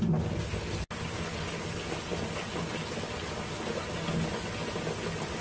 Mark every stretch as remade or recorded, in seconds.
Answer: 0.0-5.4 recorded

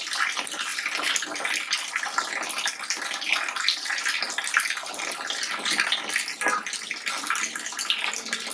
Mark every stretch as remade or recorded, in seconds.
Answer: 0.0-8.5 recorded

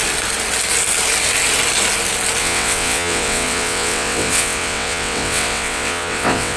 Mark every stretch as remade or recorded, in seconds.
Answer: 0.0-2.4 recorded; 2.4-6.6 remade

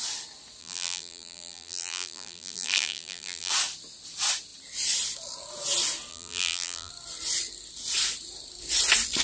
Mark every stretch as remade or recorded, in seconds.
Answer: 0.0-0.6 recorded; 0.6-3.5 remade; 3.5-6.1 recorded; 6.1-6.9 remade; 6.9-9.2 recorded

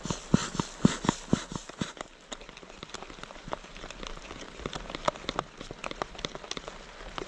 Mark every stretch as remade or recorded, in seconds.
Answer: 0.0-7.3 recorded

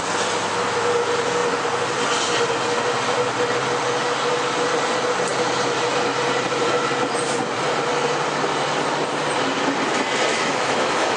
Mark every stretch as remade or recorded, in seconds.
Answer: 0.0-10.3 recorded; 10.3-11.2 remade

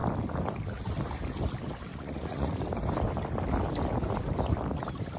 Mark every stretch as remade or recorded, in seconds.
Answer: 0.0-1.9 recorded; 1.9-2.6 remade; 2.6-5.2 recorded

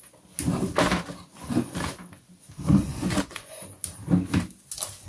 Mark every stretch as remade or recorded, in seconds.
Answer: 0.0-2.8 recorded; 2.8-3.6 remade; 3.6-5.1 recorded